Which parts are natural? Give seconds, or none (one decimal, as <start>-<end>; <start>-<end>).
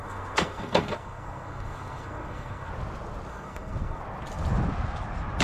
2.7-3.3; 4.0-5.4